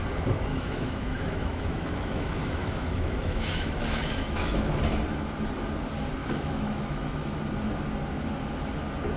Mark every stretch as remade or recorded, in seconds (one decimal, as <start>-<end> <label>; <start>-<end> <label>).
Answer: 0.0-0.5 recorded; 0.5-4.8 remade; 4.8-6.2 recorded; 6.2-7.4 remade; 7.4-9.2 recorded